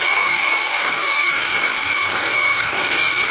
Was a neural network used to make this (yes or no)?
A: yes